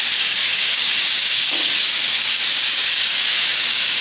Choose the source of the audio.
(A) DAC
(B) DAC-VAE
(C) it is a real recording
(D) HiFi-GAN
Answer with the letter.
A